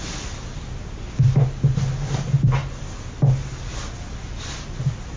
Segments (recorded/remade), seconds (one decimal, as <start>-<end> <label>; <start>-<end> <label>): 0.0-5.2 recorded